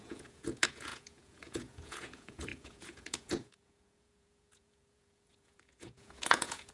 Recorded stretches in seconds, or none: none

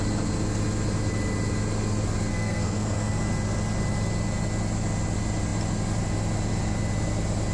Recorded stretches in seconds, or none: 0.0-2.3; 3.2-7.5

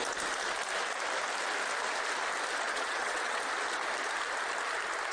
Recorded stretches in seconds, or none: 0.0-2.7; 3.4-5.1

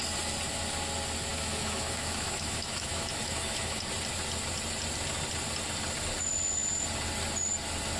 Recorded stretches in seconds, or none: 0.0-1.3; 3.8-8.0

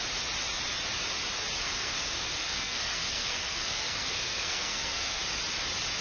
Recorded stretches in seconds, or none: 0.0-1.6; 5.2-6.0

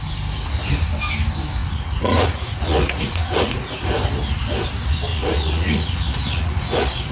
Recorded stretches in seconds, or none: 0.0-1.6; 3.9-5.1